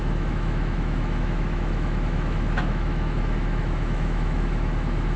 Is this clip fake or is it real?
fake